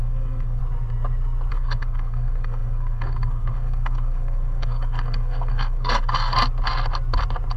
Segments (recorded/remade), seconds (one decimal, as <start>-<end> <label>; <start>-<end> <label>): 0.0-0.6 remade; 0.6-1.5 recorded; 1.5-6.4 remade; 6.4-7.6 recorded